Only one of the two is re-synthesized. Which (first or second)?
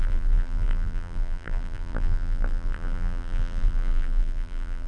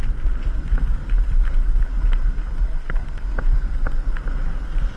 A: first